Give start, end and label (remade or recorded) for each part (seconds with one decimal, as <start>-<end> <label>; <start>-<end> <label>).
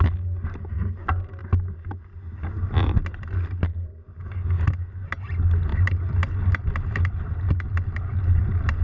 0.0-8.8 recorded